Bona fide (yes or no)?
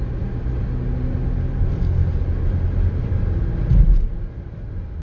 yes